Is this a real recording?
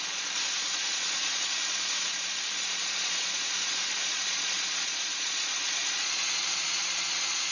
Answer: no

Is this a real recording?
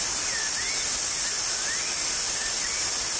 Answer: yes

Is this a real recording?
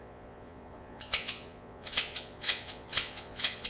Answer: no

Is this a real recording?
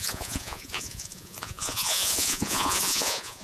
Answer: no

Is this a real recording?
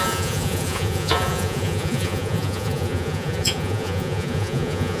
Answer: no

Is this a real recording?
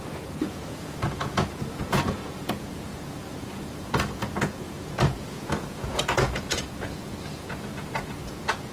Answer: no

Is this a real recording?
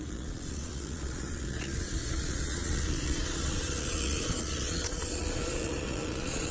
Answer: no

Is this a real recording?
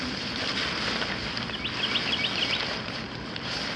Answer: yes